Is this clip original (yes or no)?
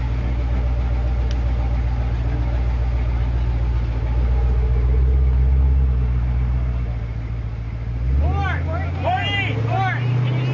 yes